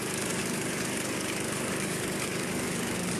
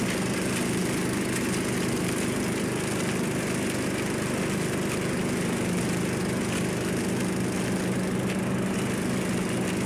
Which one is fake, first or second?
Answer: first